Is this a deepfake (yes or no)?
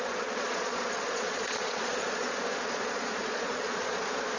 yes